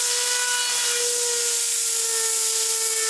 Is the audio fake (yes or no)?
no